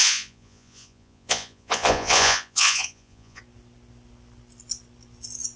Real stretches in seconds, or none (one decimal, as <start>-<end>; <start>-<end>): 3.4-5.6

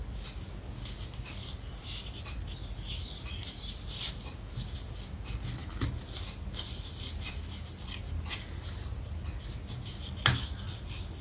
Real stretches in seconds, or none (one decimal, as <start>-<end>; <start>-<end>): 0.0-11.2

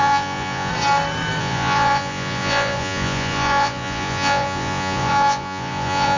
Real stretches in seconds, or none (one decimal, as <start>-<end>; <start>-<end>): 0.7-1.4

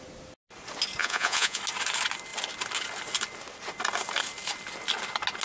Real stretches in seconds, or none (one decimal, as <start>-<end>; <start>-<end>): 0.0-1.0; 1.6-5.4

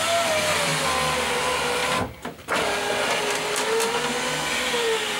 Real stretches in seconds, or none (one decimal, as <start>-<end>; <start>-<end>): 0.0-5.2

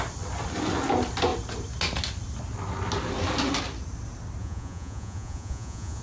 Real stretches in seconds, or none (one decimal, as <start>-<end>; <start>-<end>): 0.0-4.4

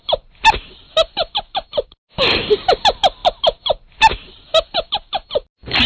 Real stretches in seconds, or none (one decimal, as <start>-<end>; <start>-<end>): 0.0-5.9